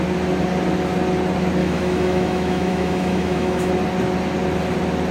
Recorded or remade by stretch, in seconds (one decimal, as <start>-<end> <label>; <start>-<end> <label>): 0.0-1.6 recorded; 1.6-3.7 remade; 3.7-5.1 recorded